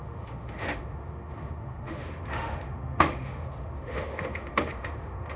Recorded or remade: remade